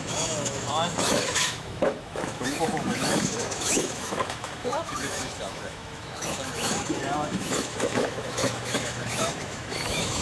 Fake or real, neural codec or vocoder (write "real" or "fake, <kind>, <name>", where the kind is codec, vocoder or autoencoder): fake, autoencoder, DAC-VAE